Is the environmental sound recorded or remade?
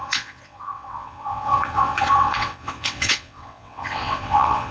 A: remade